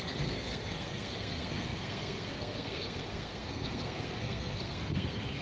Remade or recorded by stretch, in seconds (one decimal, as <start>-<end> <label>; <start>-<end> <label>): 0.0-5.4 remade